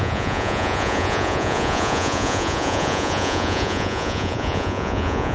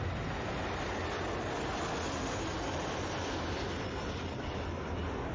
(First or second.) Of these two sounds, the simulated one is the first